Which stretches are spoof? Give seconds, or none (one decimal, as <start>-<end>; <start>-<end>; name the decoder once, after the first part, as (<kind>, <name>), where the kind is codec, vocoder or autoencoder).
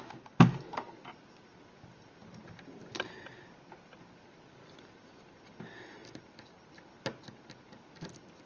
none